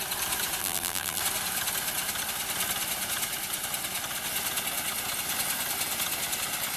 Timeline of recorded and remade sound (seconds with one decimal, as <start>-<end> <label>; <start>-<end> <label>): 0.0-0.6 recorded; 0.6-1.2 remade; 1.2-6.8 recorded